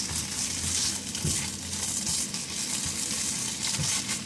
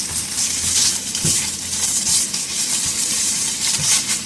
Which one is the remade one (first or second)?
second